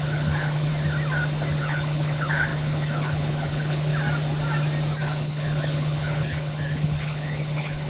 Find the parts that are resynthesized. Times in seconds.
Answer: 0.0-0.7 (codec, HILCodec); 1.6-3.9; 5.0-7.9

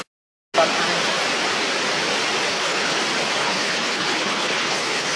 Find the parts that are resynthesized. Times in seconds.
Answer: 2.5-3.0 (codec, HILCodec); 3.4-5.2

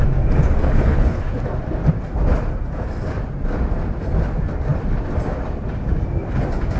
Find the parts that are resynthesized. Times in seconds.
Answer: 0.6-1.4 (codec, HILCodec)